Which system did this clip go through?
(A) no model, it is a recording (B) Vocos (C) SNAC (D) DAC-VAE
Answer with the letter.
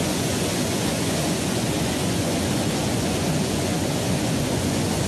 B